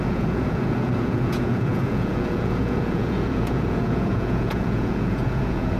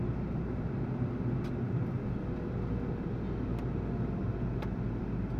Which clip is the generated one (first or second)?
first